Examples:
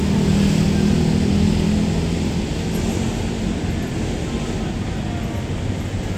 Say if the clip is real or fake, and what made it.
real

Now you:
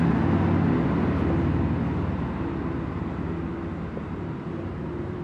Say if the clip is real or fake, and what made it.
real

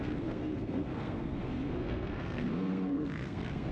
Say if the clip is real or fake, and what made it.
fake, codec, SNAC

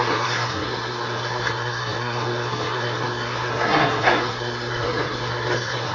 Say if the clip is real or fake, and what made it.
fake, codec, SNAC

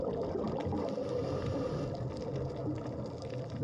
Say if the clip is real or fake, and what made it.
real